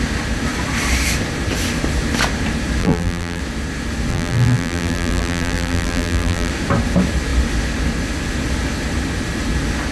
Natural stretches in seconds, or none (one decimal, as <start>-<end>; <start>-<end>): 0.0-2.8; 3.4-4.1; 6.5-9.9